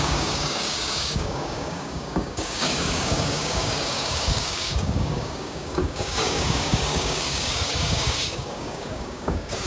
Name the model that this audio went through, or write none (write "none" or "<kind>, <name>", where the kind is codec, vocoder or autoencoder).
codec, DAC